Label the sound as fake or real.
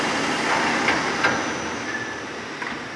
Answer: real